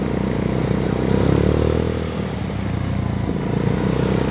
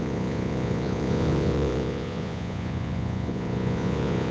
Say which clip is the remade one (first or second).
second